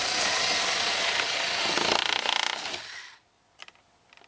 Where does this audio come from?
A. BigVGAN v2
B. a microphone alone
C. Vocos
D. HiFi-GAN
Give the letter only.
B